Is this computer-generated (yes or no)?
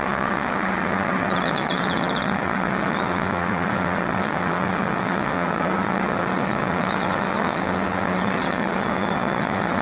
yes